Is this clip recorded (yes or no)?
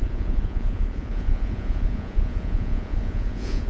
no